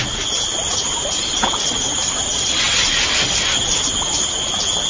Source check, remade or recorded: recorded